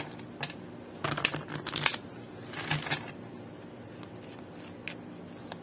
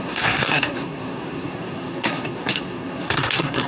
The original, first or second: first